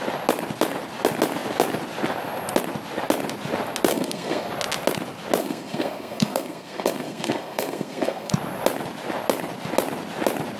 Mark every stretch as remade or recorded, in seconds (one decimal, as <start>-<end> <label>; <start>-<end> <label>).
0.0-3.9 recorded; 3.9-4.5 remade; 4.5-5.4 recorded; 5.4-8.3 remade; 8.3-10.6 recorded